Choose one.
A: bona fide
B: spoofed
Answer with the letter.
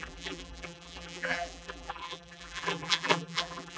B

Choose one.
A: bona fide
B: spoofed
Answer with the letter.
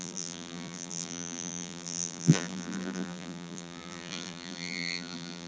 B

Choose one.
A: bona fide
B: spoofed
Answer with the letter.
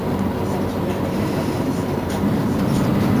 B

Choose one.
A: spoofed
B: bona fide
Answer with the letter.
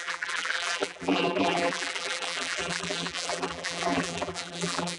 A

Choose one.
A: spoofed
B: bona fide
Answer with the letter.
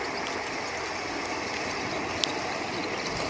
B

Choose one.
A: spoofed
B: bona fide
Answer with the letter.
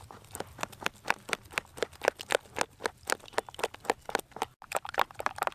B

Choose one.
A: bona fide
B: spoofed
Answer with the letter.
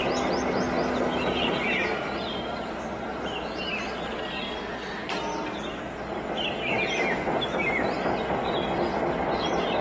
A